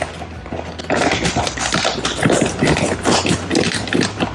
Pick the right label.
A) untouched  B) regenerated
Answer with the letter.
A